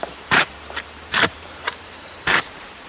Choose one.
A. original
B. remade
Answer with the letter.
B